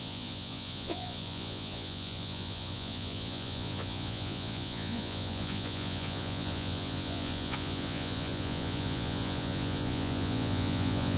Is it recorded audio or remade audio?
remade